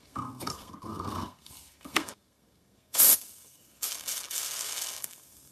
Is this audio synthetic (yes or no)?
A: yes